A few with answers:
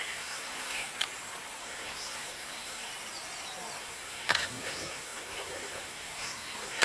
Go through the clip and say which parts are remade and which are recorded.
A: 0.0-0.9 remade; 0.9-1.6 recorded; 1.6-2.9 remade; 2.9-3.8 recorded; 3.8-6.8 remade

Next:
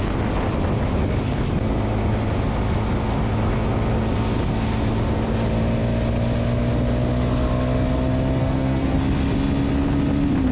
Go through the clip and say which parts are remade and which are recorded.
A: 0.0-8.4 recorded; 8.4-9.0 remade; 9.0-10.5 recorded

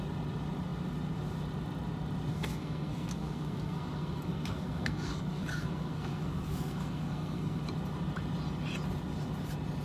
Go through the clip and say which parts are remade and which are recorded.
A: 0.0-2.3 recorded; 2.3-7.6 remade; 7.6-9.8 recorded

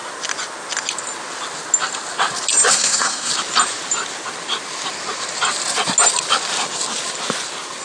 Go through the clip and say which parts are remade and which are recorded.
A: 0.0-2.7 recorded; 2.7-3.3 remade; 3.3-7.8 recorded

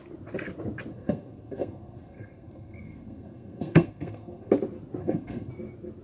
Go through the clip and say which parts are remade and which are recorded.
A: 0.0-0.9 recorded; 0.9-4.5 remade; 4.5-5.0 recorded; 5.0-5.5 remade; 5.5-6.0 recorded

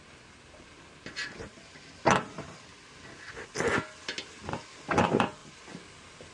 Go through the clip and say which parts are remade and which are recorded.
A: 0.0-6.3 recorded